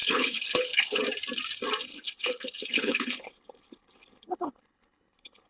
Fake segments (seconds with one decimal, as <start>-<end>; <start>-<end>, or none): 0.0-1.0; 1.9-5.5